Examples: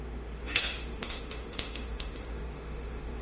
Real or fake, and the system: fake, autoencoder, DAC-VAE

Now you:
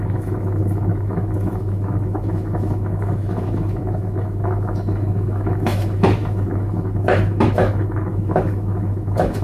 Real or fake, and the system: fake, autoencoder, DAC-VAE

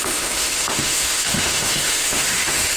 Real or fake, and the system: fake, autoencoder, DAC-VAE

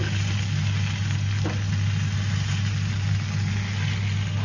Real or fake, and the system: real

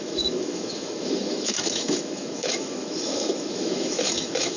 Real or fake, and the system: fake, autoencoder, DAC-VAE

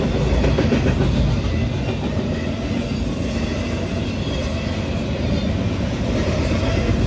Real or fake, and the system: real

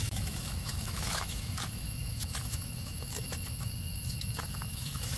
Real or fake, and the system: fake, autoencoder, DAC-VAE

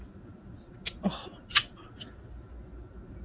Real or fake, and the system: real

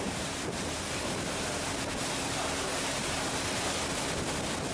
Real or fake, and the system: real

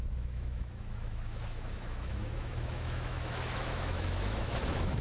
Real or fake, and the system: fake, autoencoder, DAC-VAE